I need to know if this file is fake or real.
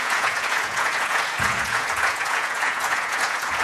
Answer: fake